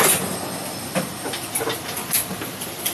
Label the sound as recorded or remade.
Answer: recorded